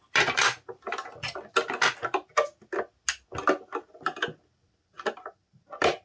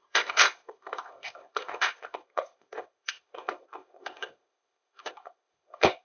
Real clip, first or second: first